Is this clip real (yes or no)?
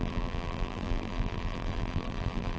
no